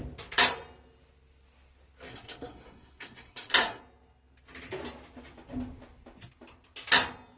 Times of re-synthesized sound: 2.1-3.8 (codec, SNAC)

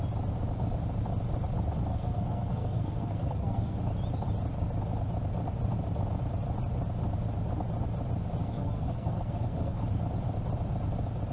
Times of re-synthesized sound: 1.9-3.8 (codec, SNAC); 8.4-9.8

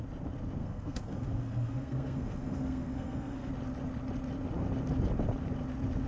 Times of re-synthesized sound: 0.6-3.5 (codec, SNAC)

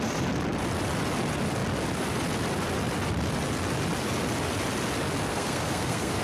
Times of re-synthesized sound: 5.3-6.2 (codec, SNAC)

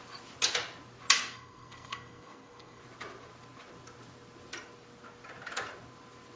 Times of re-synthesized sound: 1.2-2.8 (codec, SNAC)

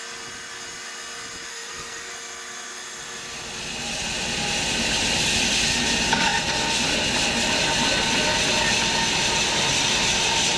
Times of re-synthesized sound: 1.5-2.1 (codec, SNAC)

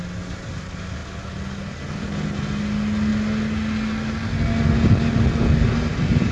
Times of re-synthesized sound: none